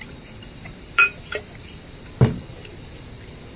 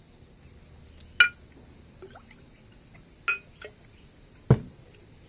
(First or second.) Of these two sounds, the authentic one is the second